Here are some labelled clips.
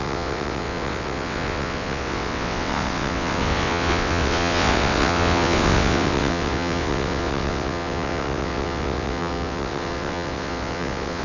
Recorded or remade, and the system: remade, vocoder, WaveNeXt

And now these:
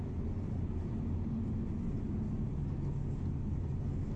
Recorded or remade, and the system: recorded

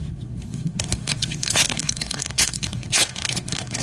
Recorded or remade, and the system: remade, codec, SNAC